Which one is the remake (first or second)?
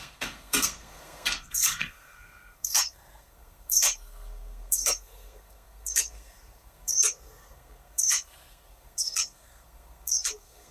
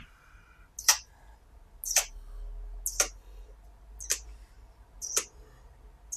first